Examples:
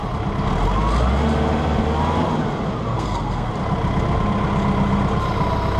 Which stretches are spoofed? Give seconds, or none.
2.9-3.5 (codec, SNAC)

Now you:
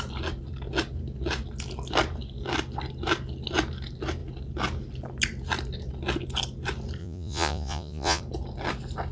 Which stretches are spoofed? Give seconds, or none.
7.0-8.2 (vocoder, Vocos)

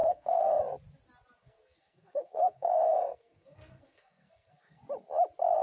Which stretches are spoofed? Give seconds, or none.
0.0-0.6 (codec, SNAC); 1.4-4.8

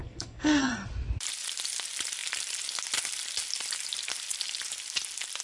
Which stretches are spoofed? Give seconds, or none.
0.0-0.7 (codec, SNAC)

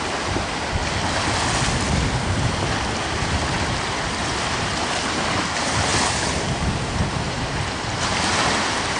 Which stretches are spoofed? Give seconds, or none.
0.0-0.8 (vocoder, BigVGAN v2); 4.2-4.7; 5.4-9.0

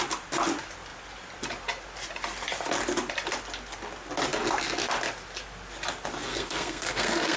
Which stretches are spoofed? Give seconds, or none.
6.3-7.4 (codec, SNAC)